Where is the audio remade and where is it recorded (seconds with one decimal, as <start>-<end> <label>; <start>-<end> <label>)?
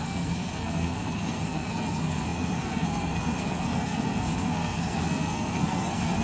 0.0-6.2 remade